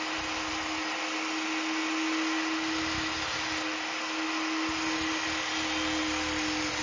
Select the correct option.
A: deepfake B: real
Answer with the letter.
B